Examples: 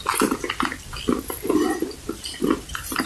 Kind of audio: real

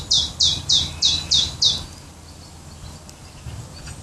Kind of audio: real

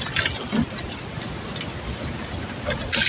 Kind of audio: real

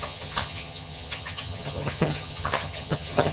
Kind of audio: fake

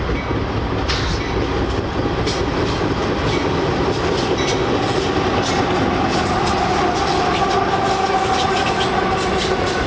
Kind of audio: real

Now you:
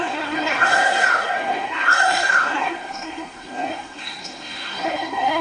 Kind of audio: fake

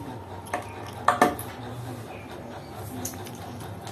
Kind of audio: real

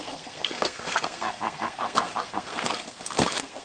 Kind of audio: fake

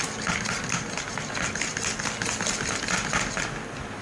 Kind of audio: real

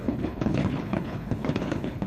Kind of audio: fake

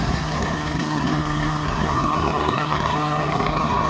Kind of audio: fake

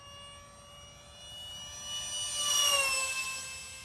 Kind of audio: real